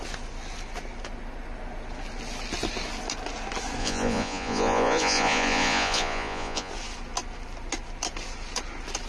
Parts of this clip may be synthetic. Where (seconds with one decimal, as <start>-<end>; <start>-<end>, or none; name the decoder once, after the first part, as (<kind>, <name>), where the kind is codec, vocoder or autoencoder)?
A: 3.8-6.7 (vocoder, Vocos)